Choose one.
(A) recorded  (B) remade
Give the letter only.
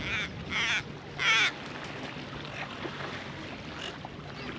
A